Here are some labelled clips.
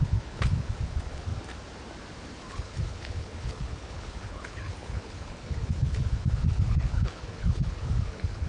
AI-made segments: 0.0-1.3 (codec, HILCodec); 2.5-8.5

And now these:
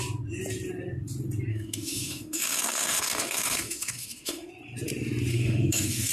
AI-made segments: 1.5-4.5 (autoencoder, DAC-VAE); 5.3-6.1

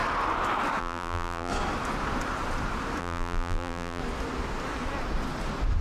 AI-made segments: 0.8-1.5 (vocoder, BigVGAN v2); 3.0-4.0

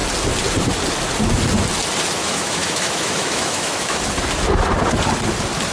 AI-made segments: 2.2-4.0 (autoencoder, DAC-VAE)